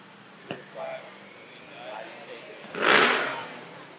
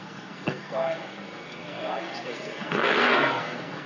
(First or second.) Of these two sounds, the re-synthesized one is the second